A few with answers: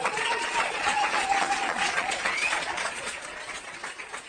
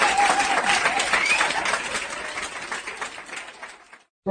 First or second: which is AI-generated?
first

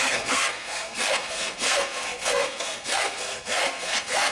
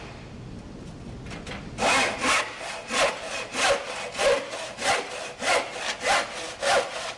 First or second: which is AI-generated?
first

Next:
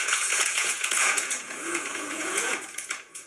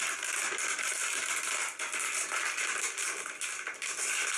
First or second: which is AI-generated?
first